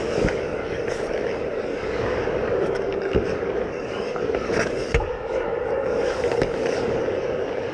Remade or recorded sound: remade